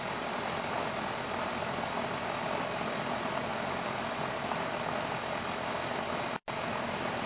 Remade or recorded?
recorded